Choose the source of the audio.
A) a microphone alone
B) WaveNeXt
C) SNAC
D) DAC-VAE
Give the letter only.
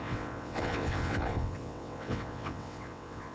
B